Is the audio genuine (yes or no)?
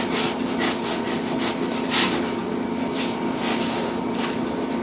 yes